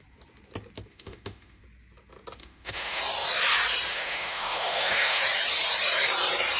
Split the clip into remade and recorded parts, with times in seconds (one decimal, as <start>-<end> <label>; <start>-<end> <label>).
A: 0.0-0.9 recorded; 0.9-1.6 remade; 1.6-2.4 recorded; 2.4-3.0 remade; 3.0-3.9 recorded; 3.9-5.2 remade; 5.2-6.6 recorded